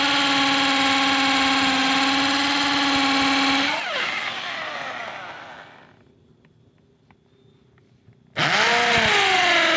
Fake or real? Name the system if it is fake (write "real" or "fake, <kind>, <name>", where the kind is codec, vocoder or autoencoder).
real